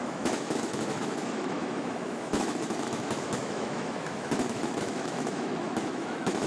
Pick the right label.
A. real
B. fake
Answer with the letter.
B